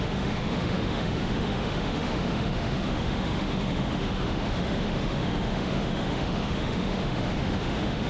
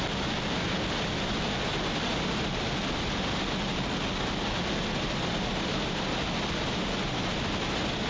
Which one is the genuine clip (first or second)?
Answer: second